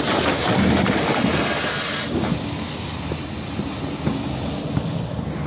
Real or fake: real